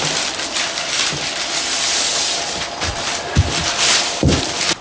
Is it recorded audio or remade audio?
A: remade